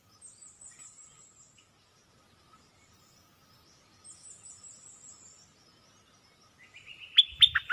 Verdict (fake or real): real